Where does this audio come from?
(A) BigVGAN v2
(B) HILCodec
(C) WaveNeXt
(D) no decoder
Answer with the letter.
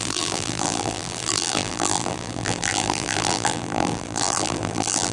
A